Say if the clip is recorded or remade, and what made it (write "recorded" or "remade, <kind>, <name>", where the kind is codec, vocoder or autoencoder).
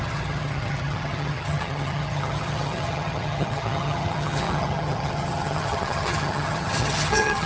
remade, vocoder, HiFi-GAN